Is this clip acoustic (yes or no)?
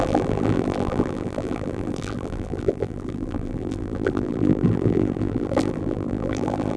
no